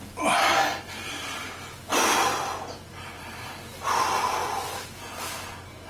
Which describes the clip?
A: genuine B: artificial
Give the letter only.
A